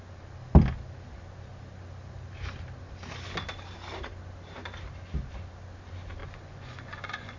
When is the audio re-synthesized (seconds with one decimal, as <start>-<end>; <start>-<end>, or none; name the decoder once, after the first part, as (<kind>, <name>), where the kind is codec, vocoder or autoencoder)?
6.2-7.4 (vocoder, Vocos)